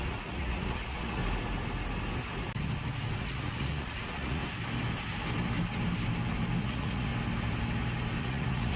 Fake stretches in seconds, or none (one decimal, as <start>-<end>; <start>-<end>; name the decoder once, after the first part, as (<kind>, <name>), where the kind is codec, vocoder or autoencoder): 0.0-1.2 (vocoder, Vocos); 3.2-4.4; 6.6-7.1; 8.2-8.8